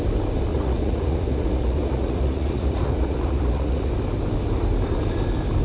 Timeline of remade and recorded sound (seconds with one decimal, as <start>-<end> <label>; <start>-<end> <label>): 0.0-0.5 recorded; 0.5-3.9 remade; 3.9-5.6 recorded